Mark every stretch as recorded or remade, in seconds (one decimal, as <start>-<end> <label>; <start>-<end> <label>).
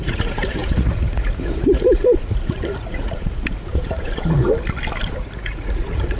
0.0-4.5 remade; 4.5-5.2 recorded; 5.2-6.2 remade